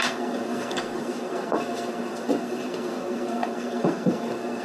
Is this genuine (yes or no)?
no